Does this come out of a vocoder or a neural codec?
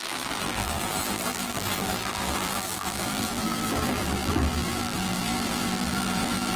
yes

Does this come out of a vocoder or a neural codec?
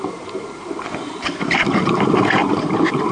yes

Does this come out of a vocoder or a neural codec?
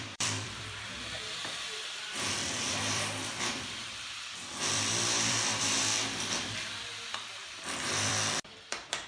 yes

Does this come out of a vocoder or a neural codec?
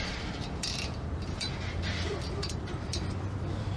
yes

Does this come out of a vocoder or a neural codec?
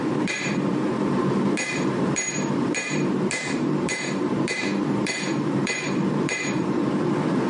yes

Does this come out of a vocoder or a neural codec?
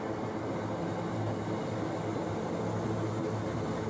no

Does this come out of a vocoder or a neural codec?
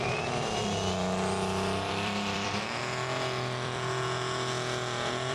yes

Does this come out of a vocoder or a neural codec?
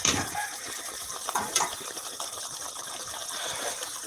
yes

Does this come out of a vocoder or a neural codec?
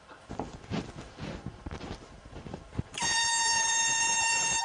yes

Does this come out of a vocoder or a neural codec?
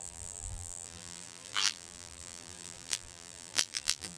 yes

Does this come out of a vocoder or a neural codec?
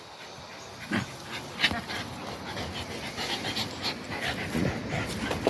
no